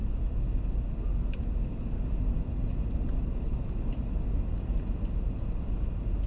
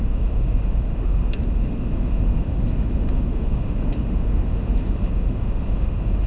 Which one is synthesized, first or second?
second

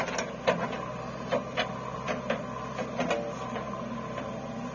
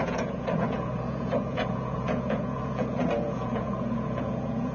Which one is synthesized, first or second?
second